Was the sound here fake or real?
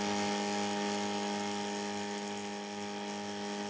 real